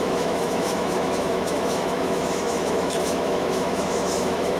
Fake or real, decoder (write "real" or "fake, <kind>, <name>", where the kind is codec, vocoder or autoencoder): fake, autoencoder, DAC-VAE